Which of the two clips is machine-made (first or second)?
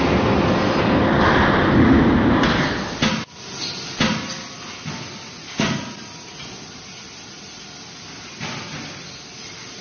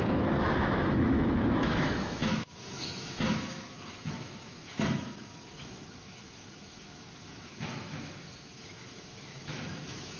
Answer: second